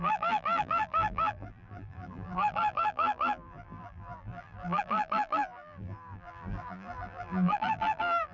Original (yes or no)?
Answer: no